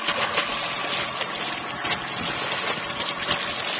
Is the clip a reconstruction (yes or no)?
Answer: no